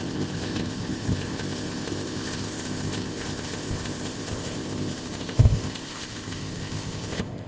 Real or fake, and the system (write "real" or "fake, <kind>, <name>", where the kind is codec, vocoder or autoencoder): fake, codec, ZipCodec